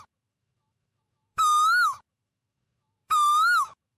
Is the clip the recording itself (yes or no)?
no